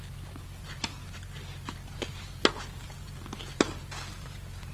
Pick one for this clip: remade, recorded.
recorded